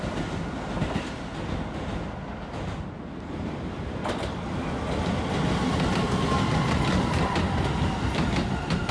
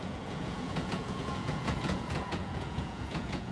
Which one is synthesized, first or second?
second